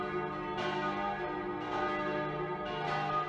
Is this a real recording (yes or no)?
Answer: yes